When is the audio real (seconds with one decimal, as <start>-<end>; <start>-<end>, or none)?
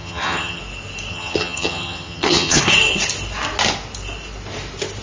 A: 0.6-1.1; 2.6-5.0